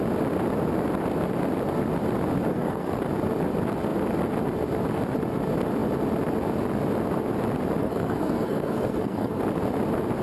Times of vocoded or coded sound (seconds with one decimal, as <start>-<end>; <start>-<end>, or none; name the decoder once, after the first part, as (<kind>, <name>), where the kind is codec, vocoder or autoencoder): 2.5-3.0 (codec, SNAC); 7.8-9.4